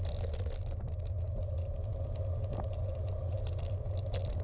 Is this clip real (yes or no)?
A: yes